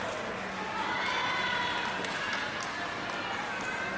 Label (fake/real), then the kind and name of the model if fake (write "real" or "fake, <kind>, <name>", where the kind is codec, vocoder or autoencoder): real